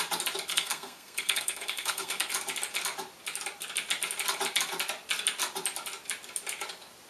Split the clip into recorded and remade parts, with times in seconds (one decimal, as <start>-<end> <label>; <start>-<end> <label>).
0.0-0.5 recorded; 0.5-2.3 remade; 2.3-7.1 recorded